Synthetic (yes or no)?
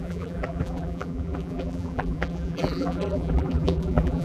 yes